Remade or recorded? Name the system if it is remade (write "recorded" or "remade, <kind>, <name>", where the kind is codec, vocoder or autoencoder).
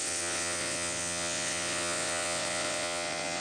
remade, vocoder, WaveNeXt